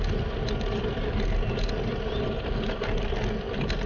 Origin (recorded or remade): recorded